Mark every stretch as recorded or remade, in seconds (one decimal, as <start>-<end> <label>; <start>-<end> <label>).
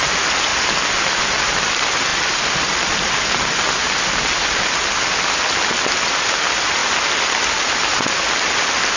0.0-9.0 recorded